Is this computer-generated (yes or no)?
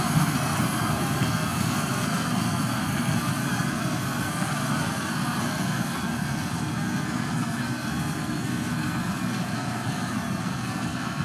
yes